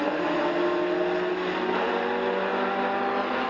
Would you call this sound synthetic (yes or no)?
no